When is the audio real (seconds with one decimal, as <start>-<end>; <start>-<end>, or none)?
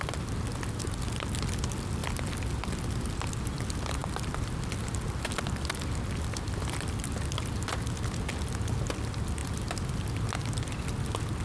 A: 0.0-11.4